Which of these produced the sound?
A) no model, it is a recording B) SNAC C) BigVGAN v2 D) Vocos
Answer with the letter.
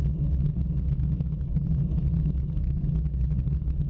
A